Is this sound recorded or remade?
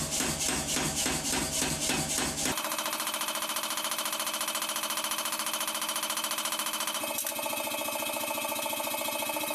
recorded